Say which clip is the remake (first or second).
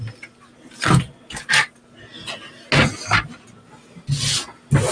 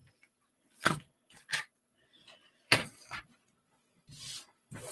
second